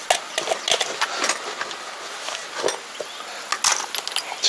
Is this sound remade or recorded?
recorded